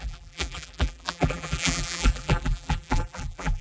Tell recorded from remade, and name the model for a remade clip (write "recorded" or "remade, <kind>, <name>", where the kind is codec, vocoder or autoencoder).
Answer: remade, vocoder, BigVGAN v2